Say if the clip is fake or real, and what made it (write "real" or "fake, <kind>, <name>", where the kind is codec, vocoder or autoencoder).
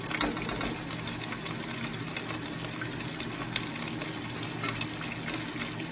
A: real